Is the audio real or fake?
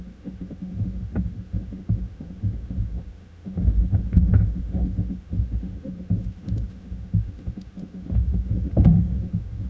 fake